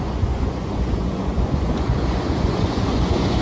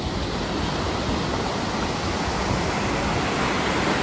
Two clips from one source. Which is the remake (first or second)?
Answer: first